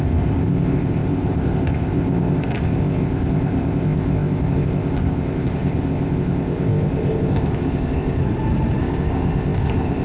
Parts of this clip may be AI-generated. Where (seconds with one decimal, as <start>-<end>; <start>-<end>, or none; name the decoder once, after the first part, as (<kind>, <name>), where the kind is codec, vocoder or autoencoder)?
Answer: 0.0-8.2 (codec, ZipCodec); 8.8-10.0